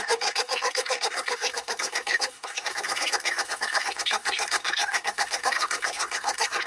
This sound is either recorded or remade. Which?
remade